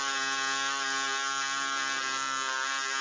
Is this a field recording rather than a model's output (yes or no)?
yes